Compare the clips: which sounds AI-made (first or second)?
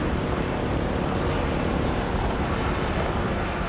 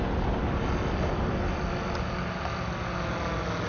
first